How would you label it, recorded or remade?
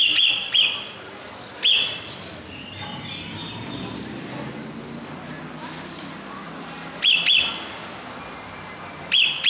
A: recorded